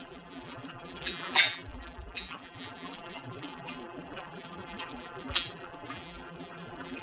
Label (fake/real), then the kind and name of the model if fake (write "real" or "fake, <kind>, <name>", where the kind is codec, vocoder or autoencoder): fake, vocoder, BigVGAN v2